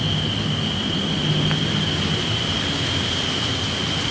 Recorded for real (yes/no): yes